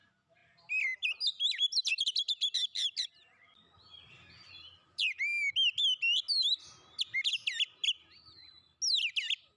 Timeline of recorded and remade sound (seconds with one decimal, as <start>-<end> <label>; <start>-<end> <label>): 0.0-9.6 recorded